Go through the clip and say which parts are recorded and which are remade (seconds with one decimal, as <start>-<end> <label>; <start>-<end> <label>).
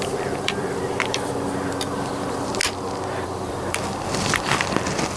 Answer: 0.0-2.6 remade; 2.6-3.2 recorded; 3.2-5.2 remade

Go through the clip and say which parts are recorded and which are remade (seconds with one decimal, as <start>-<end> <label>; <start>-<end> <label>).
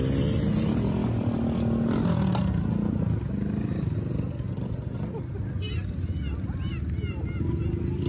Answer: 0.0-8.1 recorded